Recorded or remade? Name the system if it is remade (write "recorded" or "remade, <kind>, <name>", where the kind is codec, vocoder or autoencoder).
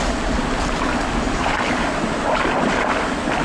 recorded